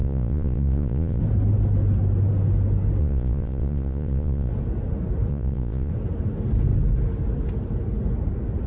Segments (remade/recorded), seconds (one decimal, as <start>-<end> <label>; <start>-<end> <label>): 0.0-1.2 remade; 1.2-3.0 recorded; 3.0-4.5 remade; 4.5-5.3 recorded; 5.3-5.9 remade; 5.9-8.7 recorded